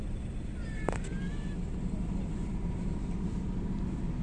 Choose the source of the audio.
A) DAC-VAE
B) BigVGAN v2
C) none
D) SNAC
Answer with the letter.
B